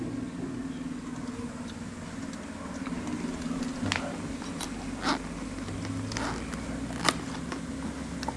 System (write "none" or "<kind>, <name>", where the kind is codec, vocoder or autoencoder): none